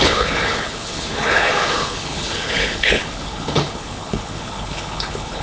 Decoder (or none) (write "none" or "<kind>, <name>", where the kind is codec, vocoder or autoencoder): codec, HILCodec